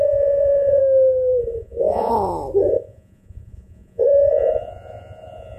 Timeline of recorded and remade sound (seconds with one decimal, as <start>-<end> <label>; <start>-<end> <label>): 0.0-0.8 remade; 0.8-1.4 recorded; 1.4-2.1 remade; 2.1-2.7 recorded; 2.7-5.6 remade